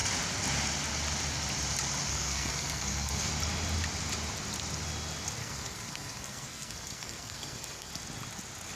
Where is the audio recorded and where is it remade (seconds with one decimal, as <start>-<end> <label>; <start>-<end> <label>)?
0.0-2.1 recorded; 2.1-3.3 remade; 3.3-5.4 recorded; 5.4-7.9 remade; 7.9-8.8 recorded